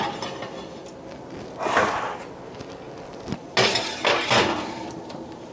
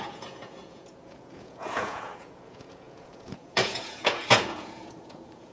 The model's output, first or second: second